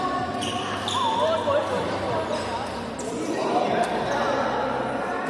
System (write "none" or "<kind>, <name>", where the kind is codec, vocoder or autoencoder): vocoder, BigVGAN v2